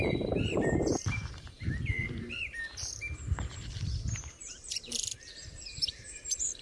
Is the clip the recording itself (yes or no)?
no